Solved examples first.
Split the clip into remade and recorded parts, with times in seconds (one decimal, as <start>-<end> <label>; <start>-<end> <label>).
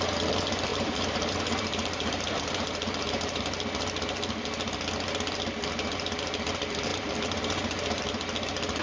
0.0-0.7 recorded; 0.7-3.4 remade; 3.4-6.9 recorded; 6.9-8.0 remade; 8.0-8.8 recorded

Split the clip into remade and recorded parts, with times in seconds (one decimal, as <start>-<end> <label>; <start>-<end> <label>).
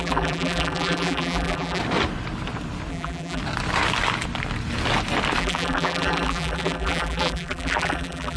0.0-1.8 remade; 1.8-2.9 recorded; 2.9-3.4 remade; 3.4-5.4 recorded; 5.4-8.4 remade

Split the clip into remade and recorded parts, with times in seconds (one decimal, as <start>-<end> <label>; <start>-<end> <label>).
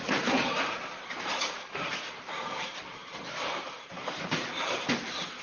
0.0-5.4 remade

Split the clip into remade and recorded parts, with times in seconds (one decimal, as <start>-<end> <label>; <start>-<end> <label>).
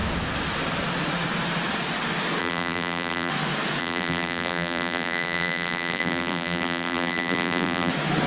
0.0-2.4 recorded; 2.4-3.3 remade; 3.3-3.8 recorded; 3.8-7.9 remade; 7.9-8.3 recorded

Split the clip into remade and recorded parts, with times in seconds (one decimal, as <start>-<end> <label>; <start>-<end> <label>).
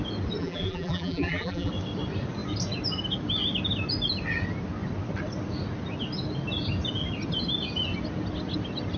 0.0-0.4 recorded; 0.4-1.7 remade; 1.7-9.0 recorded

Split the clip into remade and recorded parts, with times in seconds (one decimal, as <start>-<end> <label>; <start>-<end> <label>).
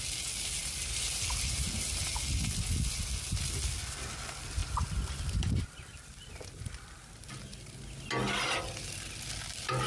0.0-0.6 recorded; 0.6-2.0 remade; 2.0-4.6 recorded; 4.6-6.3 remade; 6.3-9.9 recorded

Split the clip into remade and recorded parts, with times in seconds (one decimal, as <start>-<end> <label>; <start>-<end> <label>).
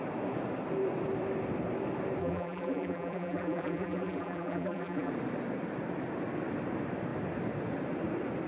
0.0-2.2 recorded; 2.2-5.1 remade; 5.1-8.5 recorded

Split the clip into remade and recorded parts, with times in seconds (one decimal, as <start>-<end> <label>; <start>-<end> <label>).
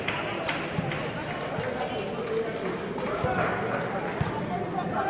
0.0-5.1 recorded